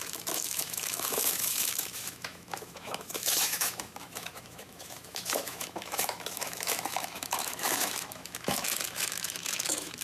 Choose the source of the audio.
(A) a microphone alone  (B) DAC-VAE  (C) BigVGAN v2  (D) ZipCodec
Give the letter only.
B